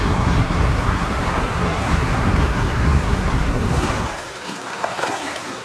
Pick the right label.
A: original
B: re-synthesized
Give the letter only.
B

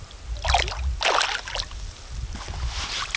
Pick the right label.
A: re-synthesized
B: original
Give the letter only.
B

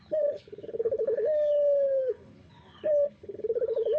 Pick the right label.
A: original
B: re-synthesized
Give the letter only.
B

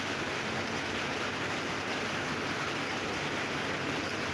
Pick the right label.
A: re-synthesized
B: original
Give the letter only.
B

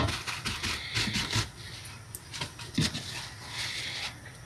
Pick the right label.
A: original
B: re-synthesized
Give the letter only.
A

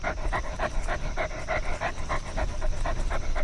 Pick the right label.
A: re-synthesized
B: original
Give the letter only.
B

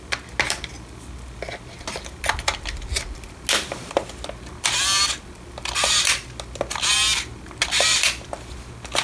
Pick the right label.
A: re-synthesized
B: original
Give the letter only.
B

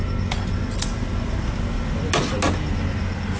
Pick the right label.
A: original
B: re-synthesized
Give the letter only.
A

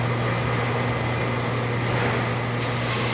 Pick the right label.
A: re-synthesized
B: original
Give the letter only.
B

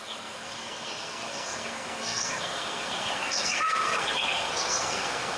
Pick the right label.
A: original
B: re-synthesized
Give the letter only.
B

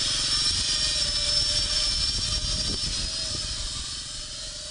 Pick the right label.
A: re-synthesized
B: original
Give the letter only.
B